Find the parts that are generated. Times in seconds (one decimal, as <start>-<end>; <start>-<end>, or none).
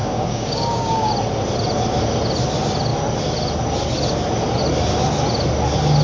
0.0-1.1